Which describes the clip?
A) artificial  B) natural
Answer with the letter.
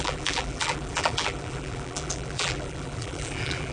A